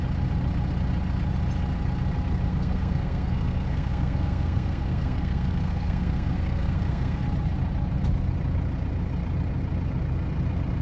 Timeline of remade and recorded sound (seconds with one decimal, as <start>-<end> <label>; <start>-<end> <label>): 0.0-2.5 recorded; 2.5-7.2 remade; 7.2-10.8 recorded